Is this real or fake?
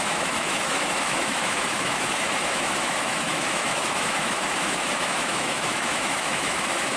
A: fake